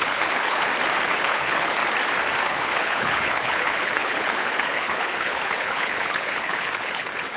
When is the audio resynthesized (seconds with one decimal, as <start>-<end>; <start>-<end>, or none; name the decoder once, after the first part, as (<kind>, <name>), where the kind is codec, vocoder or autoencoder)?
0.0-0.7 (codec, HILCodec); 1.2-1.8; 2.4-7.4